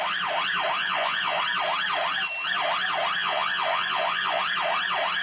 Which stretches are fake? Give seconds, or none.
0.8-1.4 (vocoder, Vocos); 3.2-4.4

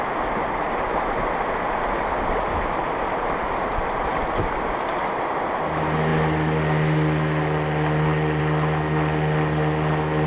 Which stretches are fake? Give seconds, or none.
none

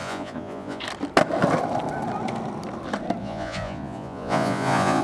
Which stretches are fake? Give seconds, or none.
0.0-0.8 (vocoder, Vocos); 3.2-5.0

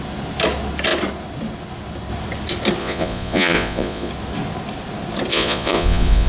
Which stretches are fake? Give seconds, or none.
2.8-4.1 (vocoder, Vocos); 5.3-6.3

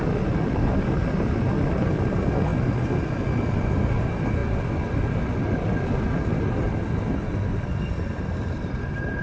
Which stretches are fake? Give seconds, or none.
none

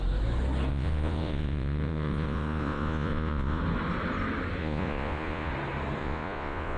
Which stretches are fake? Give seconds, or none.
0.7-3.6 (vocoder, Vocos); 4.6-5.5; 6.0-6.8

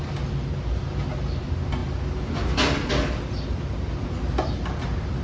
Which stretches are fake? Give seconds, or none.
none